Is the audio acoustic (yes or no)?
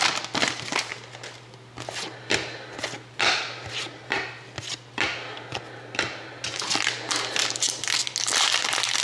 yes